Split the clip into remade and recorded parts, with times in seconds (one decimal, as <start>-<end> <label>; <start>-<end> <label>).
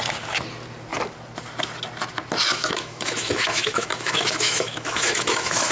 0.0-2.5 recorded; 2.5-5.7 remade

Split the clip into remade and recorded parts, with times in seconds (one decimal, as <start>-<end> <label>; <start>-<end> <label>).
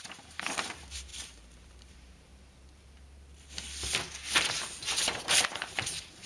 0.0-2.3 remade; 2.3-5.3 recorded; 5.3-6.3 remade